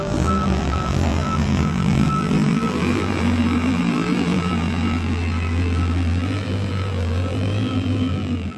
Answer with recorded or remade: remade